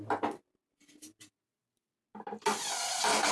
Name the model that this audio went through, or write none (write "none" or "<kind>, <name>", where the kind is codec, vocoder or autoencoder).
none